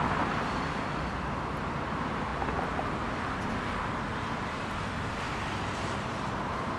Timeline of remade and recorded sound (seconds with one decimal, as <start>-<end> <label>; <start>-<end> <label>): 0.0-6.8 recorded